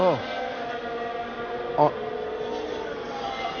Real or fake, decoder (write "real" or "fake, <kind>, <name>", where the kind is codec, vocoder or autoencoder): real